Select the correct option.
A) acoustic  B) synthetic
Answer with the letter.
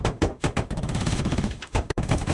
B